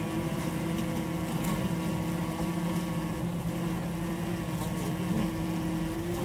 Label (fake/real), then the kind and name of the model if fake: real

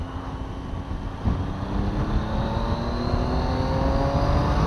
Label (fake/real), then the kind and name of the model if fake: real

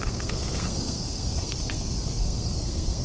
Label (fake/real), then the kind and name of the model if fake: fake, codec, SNAC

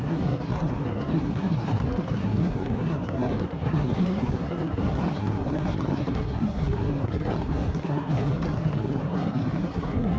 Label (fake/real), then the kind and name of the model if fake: fake, codec, SNAC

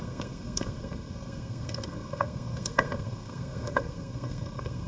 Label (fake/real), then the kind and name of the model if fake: fake, codec, SNAC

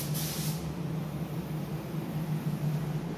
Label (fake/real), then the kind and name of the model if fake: real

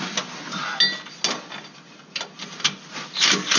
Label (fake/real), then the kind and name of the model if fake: real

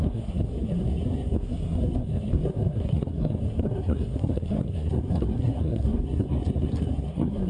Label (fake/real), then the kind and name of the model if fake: fake, codec, SNAC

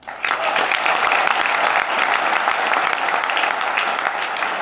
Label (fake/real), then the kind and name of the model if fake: real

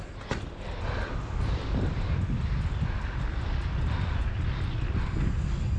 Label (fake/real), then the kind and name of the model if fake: real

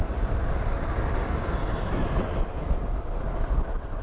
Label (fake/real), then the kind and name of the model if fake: real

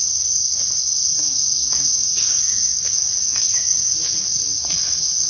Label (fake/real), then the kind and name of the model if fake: fake, codec, SNAC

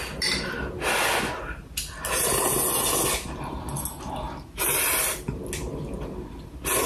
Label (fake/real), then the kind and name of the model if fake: real